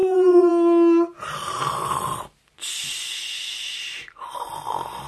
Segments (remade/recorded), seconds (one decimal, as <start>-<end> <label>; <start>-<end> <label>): 0.0-0.5 remade; 0.5-5.1 recorded